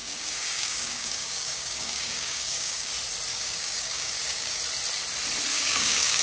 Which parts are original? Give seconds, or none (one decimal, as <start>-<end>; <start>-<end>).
2.9-3.3; 4.6-5.5